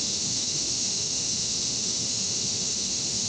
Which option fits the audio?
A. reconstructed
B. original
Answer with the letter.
A